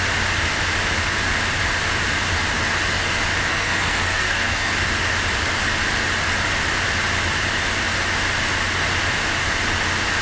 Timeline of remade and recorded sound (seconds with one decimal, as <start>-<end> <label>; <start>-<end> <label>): 0.0-3.5 recorded; 3.5-4.7 remade; 4.7-10.2 recorded